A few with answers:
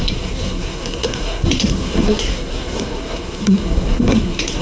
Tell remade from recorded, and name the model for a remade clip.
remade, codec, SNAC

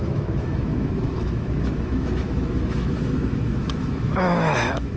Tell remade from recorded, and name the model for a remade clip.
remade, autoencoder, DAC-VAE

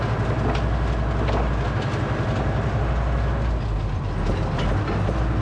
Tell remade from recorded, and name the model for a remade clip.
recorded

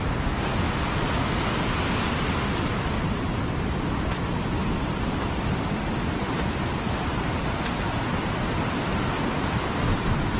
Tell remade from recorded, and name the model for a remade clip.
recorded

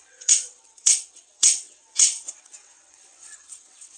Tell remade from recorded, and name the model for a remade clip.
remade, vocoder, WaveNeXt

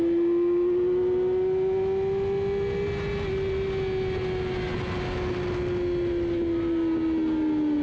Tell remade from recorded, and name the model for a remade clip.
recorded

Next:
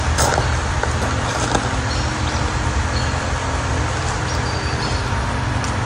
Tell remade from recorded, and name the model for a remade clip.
recorded